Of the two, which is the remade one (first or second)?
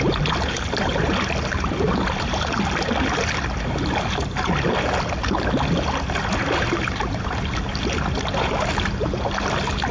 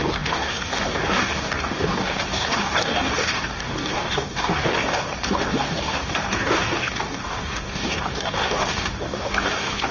second